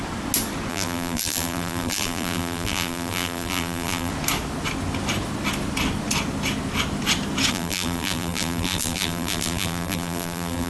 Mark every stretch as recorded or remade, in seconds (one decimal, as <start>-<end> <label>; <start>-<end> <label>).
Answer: 0.0-0.7 recorded; 0.7-4.1 remade; 4.1-7.5 recorded; 7.5-10.7 remade

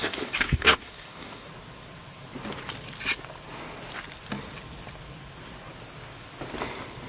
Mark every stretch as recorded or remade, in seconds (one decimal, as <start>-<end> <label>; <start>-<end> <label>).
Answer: 0.0-1.5 remade; 1.5-7.1 recorded